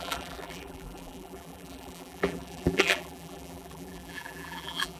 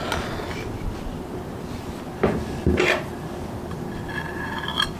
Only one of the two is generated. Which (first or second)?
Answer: first